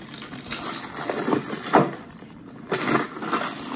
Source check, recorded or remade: recorded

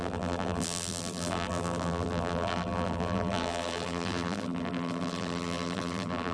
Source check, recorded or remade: remade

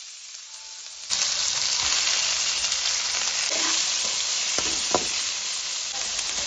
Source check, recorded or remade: recorded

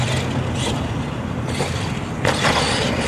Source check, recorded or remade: remade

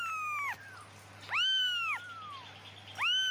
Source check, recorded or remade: recorded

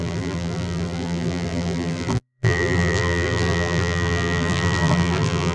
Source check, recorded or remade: remade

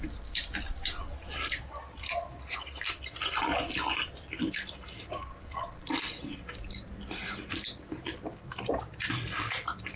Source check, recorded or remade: remade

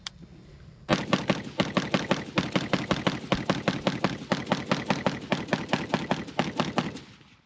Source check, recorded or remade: recorded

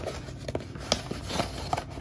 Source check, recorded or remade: recorded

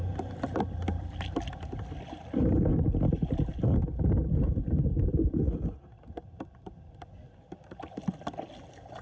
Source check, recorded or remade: recorded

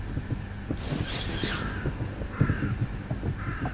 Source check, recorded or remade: recorded